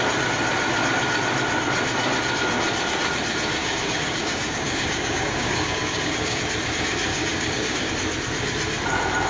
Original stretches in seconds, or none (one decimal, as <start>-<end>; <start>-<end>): 0.0-3.6; 6.4-7.1; 7.9-9.3